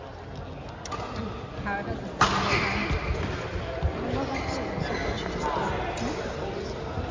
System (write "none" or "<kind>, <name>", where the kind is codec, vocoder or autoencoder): none